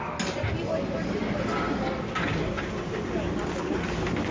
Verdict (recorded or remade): recorded